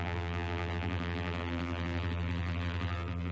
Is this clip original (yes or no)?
no